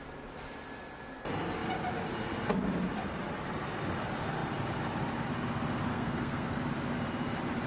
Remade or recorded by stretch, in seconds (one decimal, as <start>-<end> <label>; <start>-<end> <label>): 0.0-5.9 recorded; 5.9-6.6 remade; 6.6-7.7 recorded